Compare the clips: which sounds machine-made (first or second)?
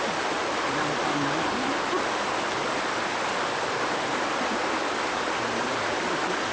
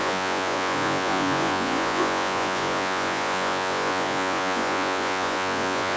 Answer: second